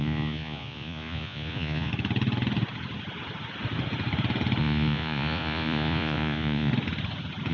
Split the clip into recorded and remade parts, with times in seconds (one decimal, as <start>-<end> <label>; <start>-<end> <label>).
0.0-1.9 remade; 1.9-4.6 recorded; 4.6-6.7 remade; 6.7-7.5 recorded